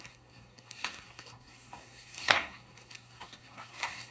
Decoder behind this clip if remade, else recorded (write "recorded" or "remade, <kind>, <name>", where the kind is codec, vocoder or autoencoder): remade, codec, SNAC